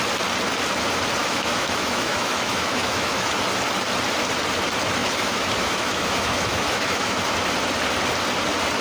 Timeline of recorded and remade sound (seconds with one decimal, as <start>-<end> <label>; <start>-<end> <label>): 0.0-1.2 recorded; 1.2-3.3 remade; 3.3-5.0 recorded; 5.0-7.2 remade; 7.2-8.8 recorded